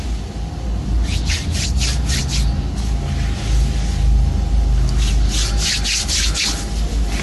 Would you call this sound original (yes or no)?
yes